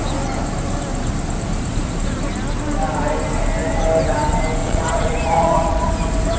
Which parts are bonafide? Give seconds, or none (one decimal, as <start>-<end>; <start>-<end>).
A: 0.0-4.6; 5.9-6.4